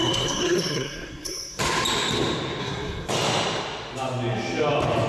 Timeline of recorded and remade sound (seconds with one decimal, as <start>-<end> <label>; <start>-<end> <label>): 0.0-1.6 remade; 1.6-2.6 recorded; 2.6-3.1 remade; 3.1-5.1 recorded

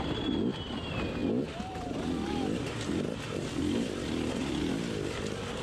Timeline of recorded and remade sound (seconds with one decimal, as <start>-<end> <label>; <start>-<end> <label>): 0.0-1.2 recorded; 1.2-4.6 remade; 4.6-5.6 recorded

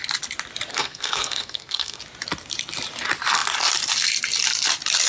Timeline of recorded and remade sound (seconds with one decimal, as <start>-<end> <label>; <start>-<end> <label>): 0.0-0.7 recorded; 0.7-2.0 remade; 2.0-5.1 recorded

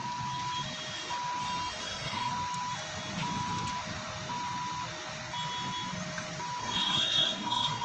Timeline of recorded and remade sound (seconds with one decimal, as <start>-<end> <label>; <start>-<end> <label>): 0.0-1.8 recorded; 1.8-2.3 remade; 2.3-6.6 recorded; 6.6-7.8 remade

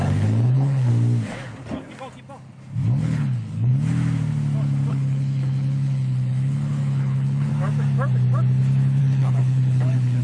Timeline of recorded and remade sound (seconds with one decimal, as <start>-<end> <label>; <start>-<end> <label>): 0.0-0.9 remade; 0.9-3.0 recorded; 3.0-3.7 remade; 3.7-4.9 recorded; 4.9-7.5 remade; 7.5-9.0 recorded; 9.0-10.2 remade

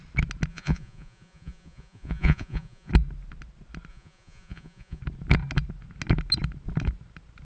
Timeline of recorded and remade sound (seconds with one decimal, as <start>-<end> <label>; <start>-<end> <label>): 0.0-0.5 recorded; 0.5-2.9 remade; 2.9-3.9 recorded; 3.9-5.0 remade; 5.0-7.4 recorded

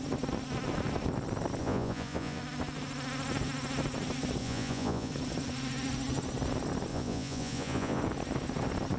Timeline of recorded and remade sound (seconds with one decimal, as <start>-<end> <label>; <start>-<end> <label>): 0.0-1.6 recorded; 1.6-2.4 remade; 2.4-4.4 recorded; 4.4-5.1 remade; 5.1-6.9 recorded; 6.9-8.0 remade; 8.0-9.0 recorded

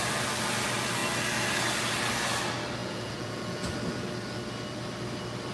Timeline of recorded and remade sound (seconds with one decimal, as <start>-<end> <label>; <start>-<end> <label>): 0.0-2.8 recorded; 2.8-3.7 remade; 3.7-5.5 recorded